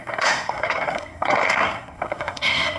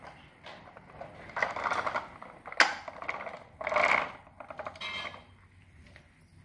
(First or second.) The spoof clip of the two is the first